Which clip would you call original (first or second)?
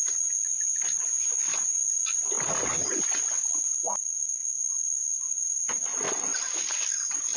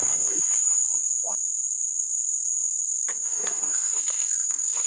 first